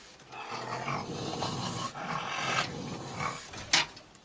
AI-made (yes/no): no